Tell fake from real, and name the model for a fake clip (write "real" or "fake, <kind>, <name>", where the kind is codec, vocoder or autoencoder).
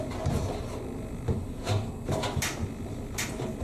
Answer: real